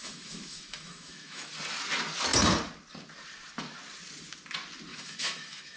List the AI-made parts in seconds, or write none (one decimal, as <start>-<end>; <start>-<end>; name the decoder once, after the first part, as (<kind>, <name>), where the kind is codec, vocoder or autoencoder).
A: 0.0-1.5 (autoencoder, DAC-VAE); 4.9-5.8